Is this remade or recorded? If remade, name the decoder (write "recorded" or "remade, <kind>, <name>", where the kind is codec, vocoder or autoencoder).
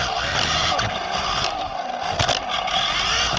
recorded